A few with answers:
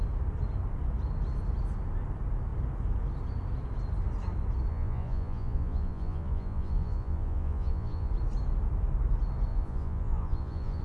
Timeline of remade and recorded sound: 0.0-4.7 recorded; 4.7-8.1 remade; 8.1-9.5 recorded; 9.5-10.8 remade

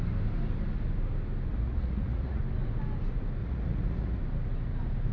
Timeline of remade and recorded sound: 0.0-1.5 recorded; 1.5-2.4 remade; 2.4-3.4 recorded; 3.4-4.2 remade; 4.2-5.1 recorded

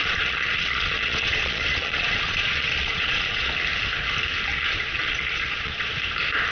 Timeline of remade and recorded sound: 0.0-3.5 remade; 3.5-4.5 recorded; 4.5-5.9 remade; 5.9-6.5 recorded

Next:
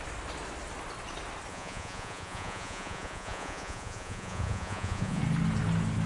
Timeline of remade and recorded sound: 0.0-1.5 recorded; 1.5-5.2 remade; 5.2-6.1 recorded